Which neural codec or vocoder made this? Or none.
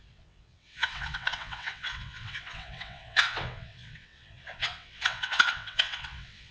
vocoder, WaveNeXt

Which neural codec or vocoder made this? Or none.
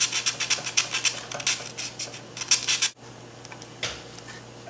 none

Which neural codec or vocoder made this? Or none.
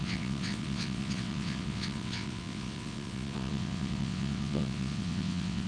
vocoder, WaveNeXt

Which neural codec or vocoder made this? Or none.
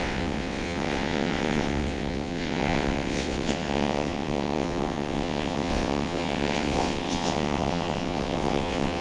vocoder, WaveNeXt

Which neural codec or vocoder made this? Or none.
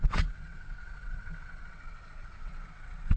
vocoder, WaveNeXt